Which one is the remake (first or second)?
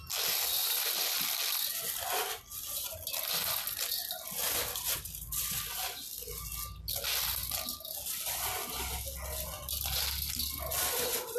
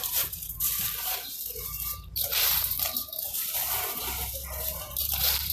second